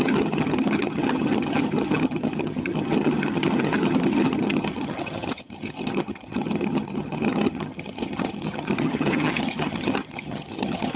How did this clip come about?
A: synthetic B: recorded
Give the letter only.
A